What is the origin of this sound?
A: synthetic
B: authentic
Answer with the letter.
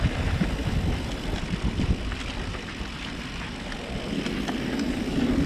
B